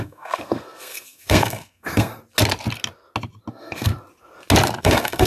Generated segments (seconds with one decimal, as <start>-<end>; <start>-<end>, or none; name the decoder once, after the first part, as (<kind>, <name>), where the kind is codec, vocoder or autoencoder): 0.0-2.1 (codec, SNAC); 3.5-3.9; 4.8-5.3